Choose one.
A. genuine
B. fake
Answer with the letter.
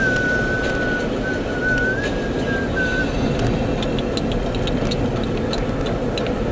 A